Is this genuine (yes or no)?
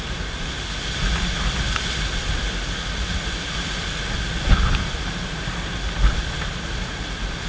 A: yes